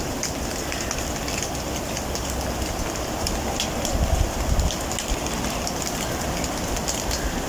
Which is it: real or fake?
real